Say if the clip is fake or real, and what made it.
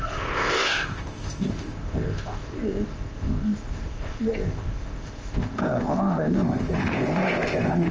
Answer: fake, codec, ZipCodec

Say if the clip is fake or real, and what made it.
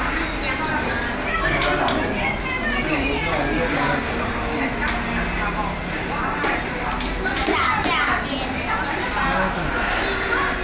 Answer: real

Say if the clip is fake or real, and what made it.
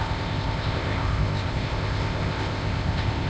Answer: fake, codec, ZipCodec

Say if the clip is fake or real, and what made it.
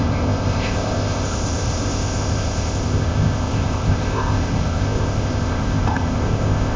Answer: fake, codec, ZipCodec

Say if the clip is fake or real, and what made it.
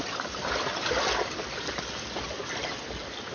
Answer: real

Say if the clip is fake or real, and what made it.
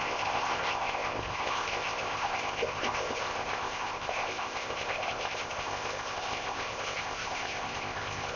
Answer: fake, codec, ZipCodec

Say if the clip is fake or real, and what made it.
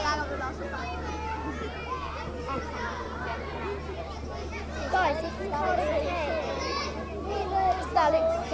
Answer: real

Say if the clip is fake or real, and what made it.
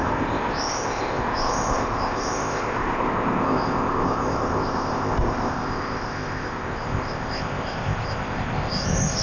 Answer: fake, codec, ZipCodec